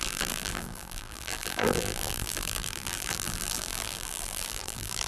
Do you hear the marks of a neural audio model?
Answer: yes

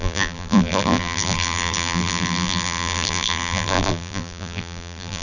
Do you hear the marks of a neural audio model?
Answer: yes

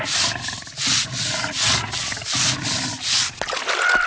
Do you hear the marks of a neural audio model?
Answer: no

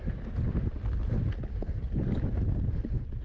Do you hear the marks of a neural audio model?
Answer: no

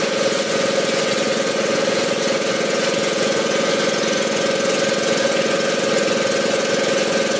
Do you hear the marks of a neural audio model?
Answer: yes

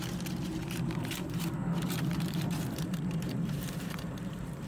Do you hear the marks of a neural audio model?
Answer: yes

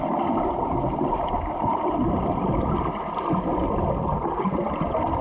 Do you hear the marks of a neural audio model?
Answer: no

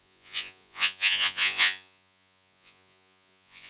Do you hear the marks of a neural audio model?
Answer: yes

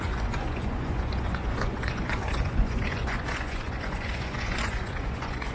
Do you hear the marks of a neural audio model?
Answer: yes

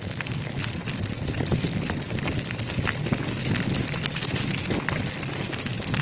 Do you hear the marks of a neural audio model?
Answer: no